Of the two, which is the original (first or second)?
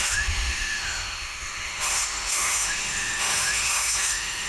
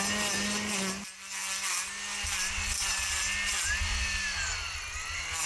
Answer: second